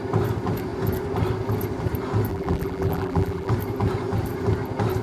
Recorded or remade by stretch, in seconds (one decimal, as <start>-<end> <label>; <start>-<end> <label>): 0.0-2.3 recorded; 2.3-3.5 remade; 3.5-5.0 recorded